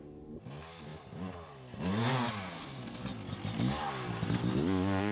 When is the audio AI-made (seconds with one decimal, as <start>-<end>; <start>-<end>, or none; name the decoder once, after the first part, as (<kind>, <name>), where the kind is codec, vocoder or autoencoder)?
none